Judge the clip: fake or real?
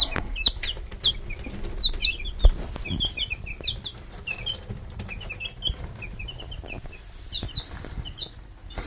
fake